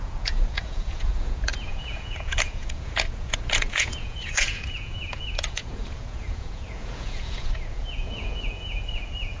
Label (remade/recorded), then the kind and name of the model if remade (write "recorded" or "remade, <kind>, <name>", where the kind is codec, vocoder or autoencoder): remade, vocoder, Vocos